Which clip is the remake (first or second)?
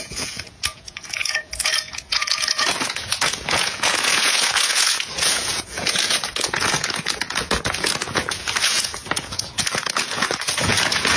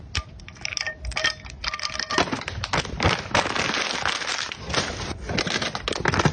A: first